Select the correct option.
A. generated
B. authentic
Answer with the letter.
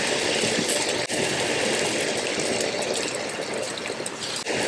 B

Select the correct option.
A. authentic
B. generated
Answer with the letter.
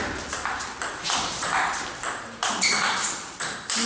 A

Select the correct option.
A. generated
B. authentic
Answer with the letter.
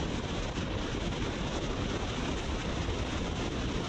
B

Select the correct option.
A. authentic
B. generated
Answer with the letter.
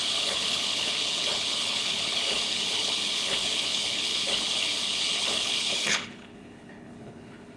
B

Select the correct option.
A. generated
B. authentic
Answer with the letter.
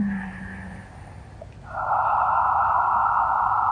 B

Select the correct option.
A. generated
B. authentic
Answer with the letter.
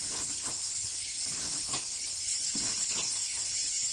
A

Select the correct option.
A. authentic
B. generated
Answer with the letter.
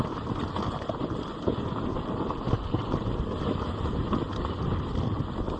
A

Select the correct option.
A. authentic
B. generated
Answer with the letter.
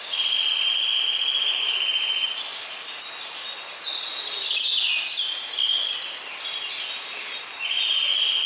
A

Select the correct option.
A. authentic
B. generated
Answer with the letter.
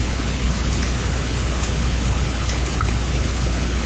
B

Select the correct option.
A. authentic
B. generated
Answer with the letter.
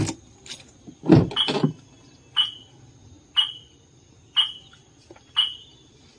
A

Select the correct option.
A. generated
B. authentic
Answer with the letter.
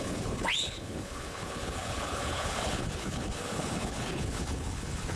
A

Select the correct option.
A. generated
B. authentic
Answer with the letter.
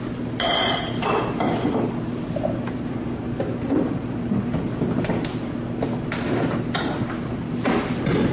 B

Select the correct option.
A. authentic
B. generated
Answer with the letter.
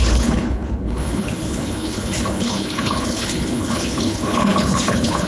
B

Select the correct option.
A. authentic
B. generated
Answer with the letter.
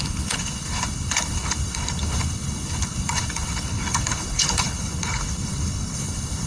B